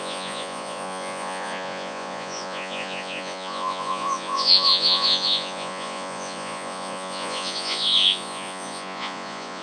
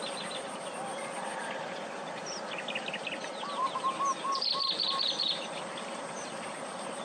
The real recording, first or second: second